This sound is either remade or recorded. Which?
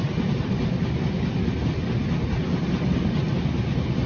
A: recorded